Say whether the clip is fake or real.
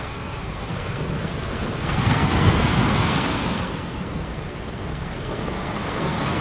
fake